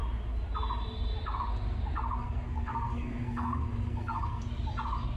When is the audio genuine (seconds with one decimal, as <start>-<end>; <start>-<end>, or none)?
0.0-2.2; 4.4-5.2